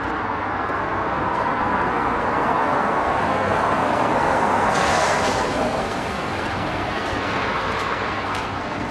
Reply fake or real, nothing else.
fake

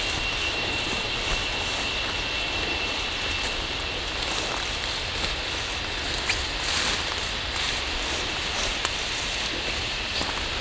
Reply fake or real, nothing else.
real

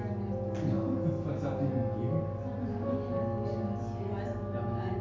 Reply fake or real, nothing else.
real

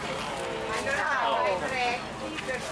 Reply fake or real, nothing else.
real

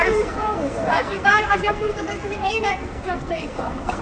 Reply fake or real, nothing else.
fake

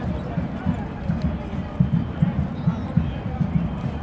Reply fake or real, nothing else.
real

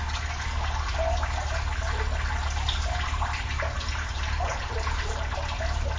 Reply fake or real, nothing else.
real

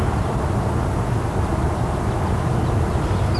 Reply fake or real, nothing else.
real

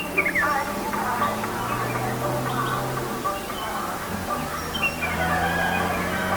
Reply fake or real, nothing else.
real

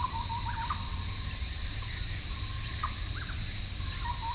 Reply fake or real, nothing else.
real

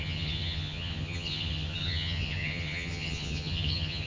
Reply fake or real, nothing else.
fake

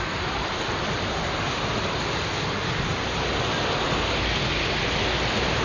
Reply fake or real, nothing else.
real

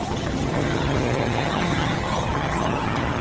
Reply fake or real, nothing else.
fake